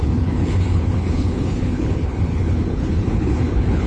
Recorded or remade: remade